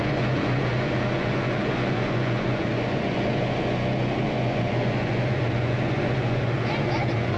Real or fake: fake